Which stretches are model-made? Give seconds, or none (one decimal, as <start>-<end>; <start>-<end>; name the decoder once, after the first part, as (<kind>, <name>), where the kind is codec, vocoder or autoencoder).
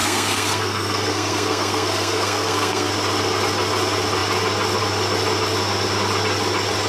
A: 0.0-2.9 (codec, SNAC)